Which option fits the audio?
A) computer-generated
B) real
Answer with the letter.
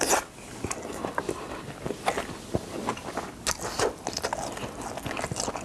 B